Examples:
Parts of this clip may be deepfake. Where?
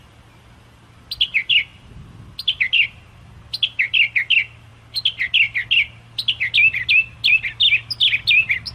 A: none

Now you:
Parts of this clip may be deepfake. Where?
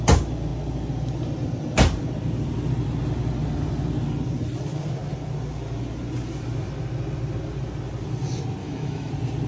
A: 8.6-9.1 (autoencoder, DAC-VAE)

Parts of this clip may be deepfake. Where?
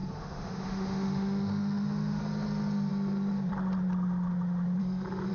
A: 0.0-2.2 (autoencoder, DAC-VAE)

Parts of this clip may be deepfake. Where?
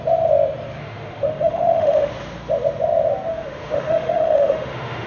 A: 0.8-2.1 (autoencoder, DAC-VAE); 3.3-5.1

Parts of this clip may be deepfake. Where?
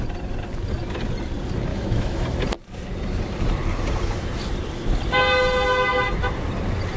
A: 1.7-2.4 (autoencoder, DAC-VAE)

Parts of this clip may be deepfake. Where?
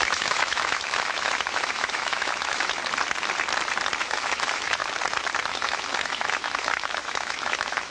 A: 0.0-2.8 (autoencoder, DAC-VAE); 4.0-4.8; 5.5-7.9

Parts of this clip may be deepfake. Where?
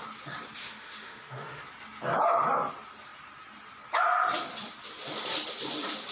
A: 0.6-1.6 (autoencoder, DAC-VAE)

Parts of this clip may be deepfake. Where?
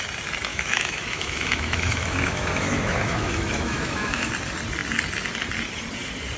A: 0.5-4.3 (autoencoder, DAC-VAE)